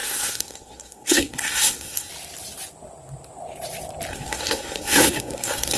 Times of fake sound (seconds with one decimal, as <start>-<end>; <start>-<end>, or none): 0.0-2.1; 4.1-5.8